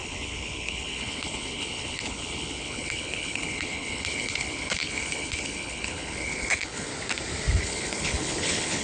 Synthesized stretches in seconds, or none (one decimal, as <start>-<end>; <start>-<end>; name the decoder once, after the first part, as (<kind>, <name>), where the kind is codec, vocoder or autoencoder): 0.0-6.9 (codec, HILCodec); 7.6-8.8